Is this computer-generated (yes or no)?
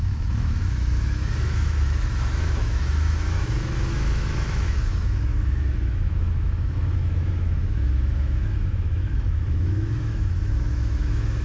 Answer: yes